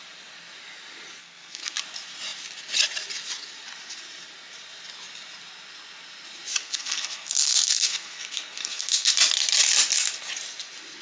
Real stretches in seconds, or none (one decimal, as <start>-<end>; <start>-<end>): 0.0-1.2; 1.8-6.6; 9.1-11.0